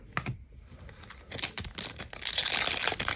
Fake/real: real